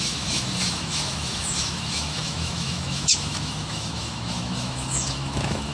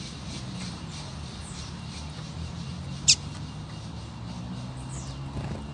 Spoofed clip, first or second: first